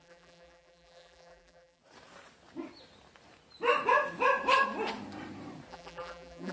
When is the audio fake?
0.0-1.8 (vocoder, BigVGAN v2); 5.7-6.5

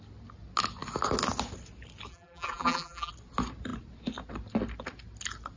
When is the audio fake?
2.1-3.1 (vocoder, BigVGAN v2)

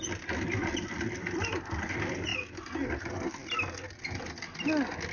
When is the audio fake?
none

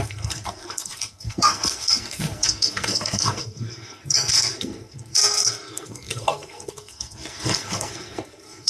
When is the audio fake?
0.0-8.7 (codec, SNAC)

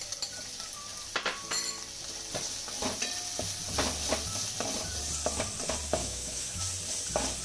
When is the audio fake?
6.0-6.6 (autoencoder, DAC-VAE)